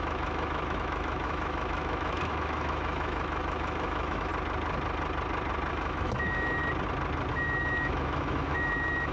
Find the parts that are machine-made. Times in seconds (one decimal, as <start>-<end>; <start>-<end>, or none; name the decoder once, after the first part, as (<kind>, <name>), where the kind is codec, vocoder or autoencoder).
0.0-4.3 (autoencoder, DAC-VAE); 5.7-6.6; 7.3-9.1